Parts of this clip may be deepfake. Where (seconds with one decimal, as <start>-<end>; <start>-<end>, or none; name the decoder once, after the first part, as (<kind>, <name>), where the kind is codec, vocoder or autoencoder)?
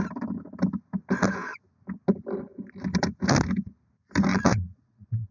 4.3-5.3 (vocoder, Vocos)